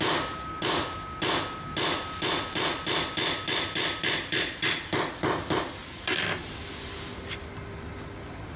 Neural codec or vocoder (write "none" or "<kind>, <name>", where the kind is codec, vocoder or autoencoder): none